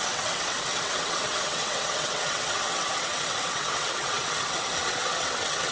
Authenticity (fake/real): fake